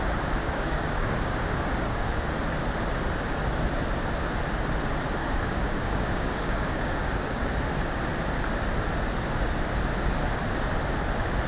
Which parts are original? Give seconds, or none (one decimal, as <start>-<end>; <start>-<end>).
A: 0.0-0.4; 2.3-5.2; 7.5-11.5